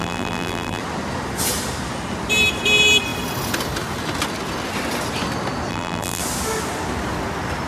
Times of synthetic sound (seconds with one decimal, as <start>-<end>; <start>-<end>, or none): 0.0-0.8; 5.7-6.2